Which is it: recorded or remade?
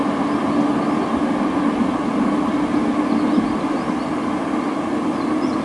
recorded